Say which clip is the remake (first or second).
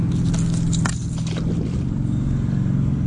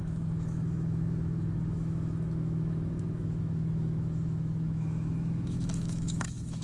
second